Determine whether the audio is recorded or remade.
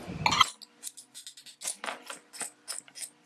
recorded